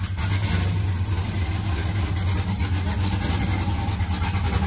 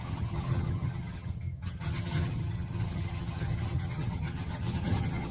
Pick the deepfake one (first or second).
second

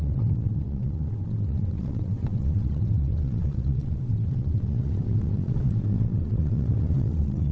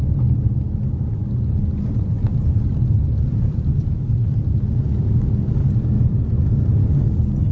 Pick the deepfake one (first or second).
first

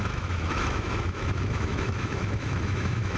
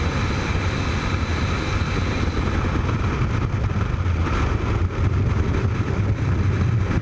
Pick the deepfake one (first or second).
first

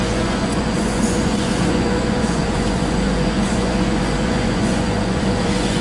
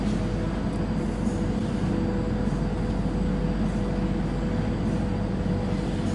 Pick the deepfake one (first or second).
first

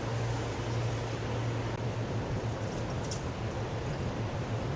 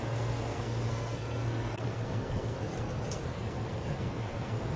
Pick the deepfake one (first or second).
second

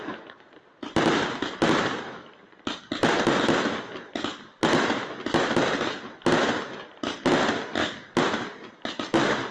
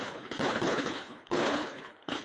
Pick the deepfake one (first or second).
second